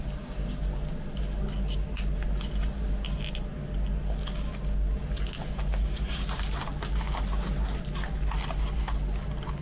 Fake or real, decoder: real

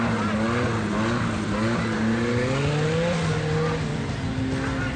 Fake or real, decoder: real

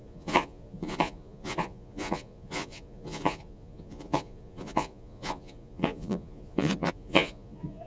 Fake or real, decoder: fake, vocoder, Vocos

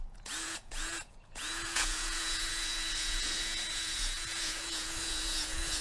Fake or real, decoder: fake, vocoder, Vocos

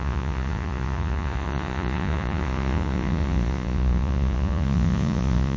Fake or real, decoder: fake, vocoder, Vocos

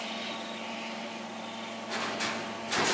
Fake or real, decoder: real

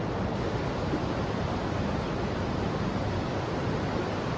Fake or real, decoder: real